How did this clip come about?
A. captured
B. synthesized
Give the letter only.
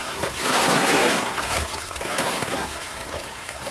B